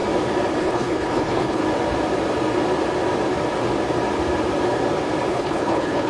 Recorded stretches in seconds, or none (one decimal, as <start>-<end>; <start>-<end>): 0.0-0.6; 1.6-5.3